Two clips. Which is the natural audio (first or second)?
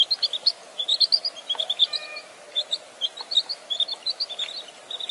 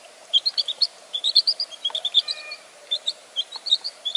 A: first